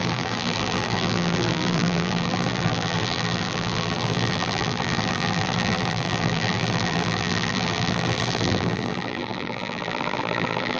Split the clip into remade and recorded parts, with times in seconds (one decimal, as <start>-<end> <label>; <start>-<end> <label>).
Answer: 0.0-10.8 remade